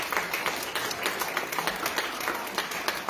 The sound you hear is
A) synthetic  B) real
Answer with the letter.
B